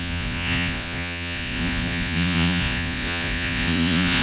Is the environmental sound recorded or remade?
remade